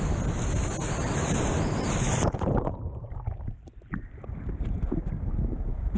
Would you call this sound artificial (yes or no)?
no